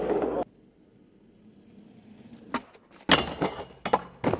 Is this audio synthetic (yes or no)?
no